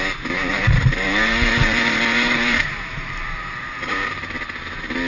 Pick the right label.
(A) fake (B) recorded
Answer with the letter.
A